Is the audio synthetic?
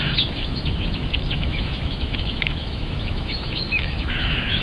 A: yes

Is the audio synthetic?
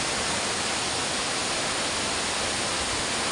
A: no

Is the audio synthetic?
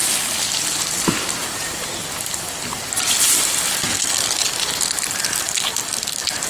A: no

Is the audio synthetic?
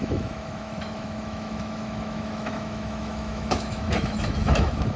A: yes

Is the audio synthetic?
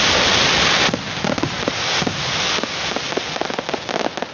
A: no